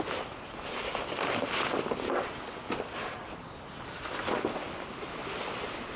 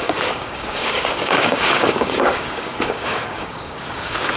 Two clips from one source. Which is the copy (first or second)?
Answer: second